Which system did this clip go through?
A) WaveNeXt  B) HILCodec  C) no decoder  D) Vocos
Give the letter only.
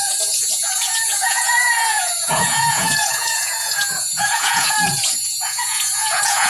D